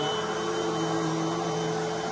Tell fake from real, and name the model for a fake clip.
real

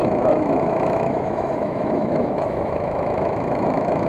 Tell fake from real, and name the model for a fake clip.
fake, autoencoder, DAC-VAE